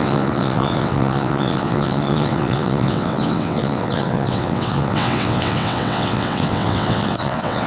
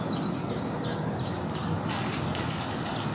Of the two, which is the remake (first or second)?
first